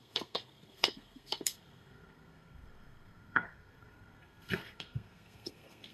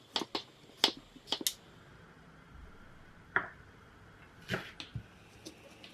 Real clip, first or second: second